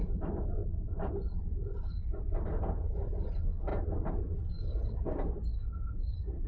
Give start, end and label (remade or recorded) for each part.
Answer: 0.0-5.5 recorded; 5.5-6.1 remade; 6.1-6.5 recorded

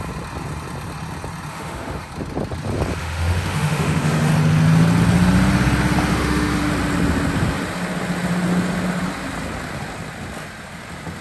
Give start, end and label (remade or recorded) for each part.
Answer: 0.0-1.5 recorded; 1.5-2.1 remade; 2.1-3.0 recorded; 3.0-4.3 remade; 4.3-6.1 recorded; 6.1-6.7 remade; 6.7-11.2 recorded

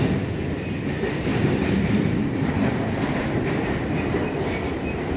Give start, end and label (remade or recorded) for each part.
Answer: 0.0-1.3 recorded; 1.3-3.2 remade; 3.2-5.2 recorded

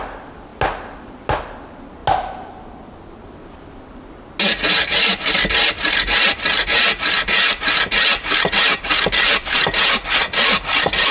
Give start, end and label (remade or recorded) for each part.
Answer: 0.0-11.1 recorded

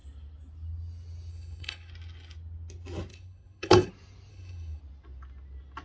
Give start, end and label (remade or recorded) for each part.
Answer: 0.0-1.3 recorded; 1.3-1.9 remade; 1.9-3.1 recorded; 3.1-3.9 remade; 3.9-4.3 recorded; 4.3-4.8 remade; 4.8-5.8 recorded

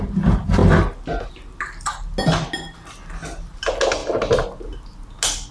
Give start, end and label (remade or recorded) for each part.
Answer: 0.0-5.5 recorded